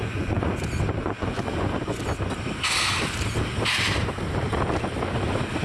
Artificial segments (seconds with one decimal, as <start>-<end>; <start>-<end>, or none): 0.0-0.6; 1.0-2.0

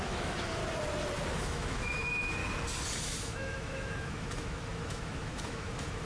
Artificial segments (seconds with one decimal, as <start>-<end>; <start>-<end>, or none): 0.0-0.6; 1.3-2.4; 3.0-6.1

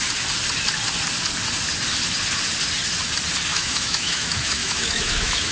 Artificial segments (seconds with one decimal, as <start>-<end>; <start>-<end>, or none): 3.5-5.5

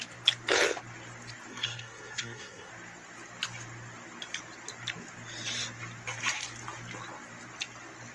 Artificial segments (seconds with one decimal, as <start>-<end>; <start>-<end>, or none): 1.5-2.7